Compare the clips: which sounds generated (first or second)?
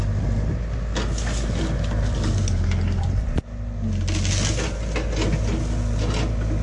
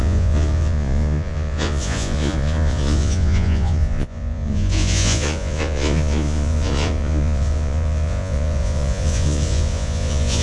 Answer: second